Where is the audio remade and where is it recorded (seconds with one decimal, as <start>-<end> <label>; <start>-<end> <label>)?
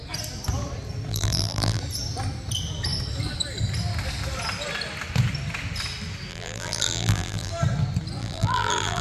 0.0-1.1 recorded; 1.1-1.8 remade; 1.8-6.3 recorded; 6.3-7.5 remade; 7.5-8.2 recorded; 8.2-9.0 remade